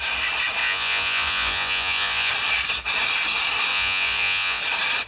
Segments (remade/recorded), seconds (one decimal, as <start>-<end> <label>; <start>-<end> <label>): 0.0-0.6 recorded; 0.6-2.3 remade; 2.3-3.7 recorded; 3.7-4.6 remade; 4.6-5.1 recorded